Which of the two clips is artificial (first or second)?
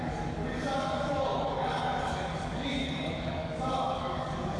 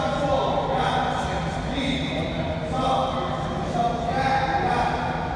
first